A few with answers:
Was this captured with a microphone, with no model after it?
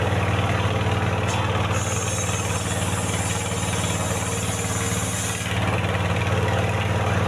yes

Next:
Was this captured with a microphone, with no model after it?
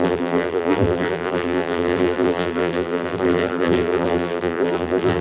no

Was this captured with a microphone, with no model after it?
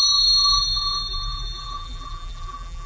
no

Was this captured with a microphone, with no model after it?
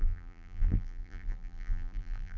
no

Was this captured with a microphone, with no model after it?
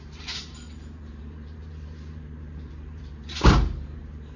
no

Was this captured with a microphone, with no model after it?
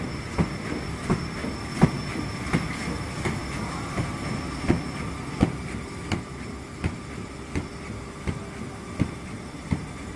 yes